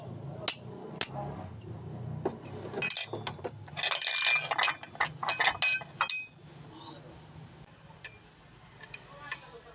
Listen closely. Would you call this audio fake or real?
real